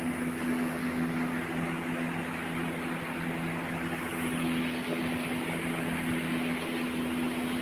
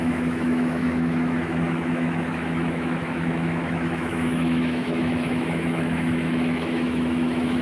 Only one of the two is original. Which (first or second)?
first